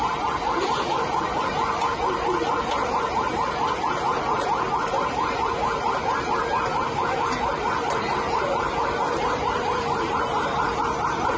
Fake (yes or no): no